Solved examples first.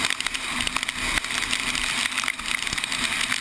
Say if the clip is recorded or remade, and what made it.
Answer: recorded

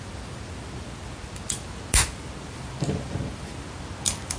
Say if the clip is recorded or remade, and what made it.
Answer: recorded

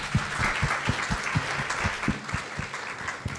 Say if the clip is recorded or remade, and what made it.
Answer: recorded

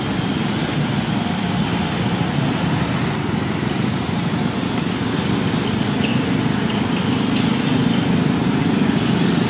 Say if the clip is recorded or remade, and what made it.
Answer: recorded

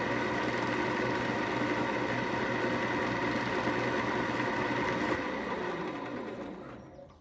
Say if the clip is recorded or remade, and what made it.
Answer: recorded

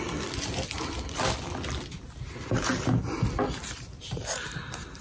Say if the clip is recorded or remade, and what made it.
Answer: recorded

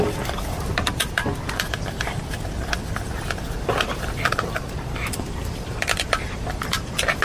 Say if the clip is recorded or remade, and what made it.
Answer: remade, vocoder, BigVGAN v2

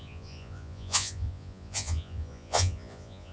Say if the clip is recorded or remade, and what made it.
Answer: remade, vocoder, Vocos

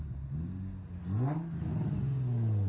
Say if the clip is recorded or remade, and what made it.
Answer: recorded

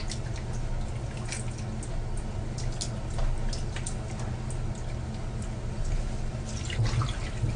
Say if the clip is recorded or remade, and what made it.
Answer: recorded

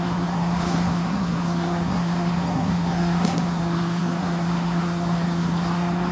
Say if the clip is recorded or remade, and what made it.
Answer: remade, codec, SNAC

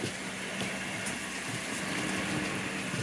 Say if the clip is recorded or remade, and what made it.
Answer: recorded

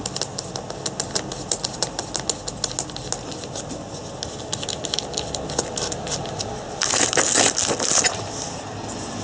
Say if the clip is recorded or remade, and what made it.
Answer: recorded